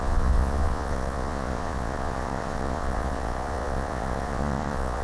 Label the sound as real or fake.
fake